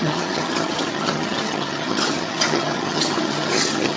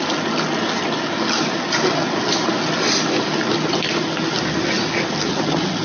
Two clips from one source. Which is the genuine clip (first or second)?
second